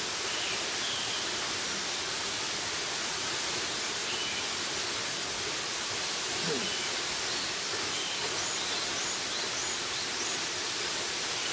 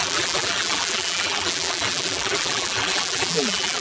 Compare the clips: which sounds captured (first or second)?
first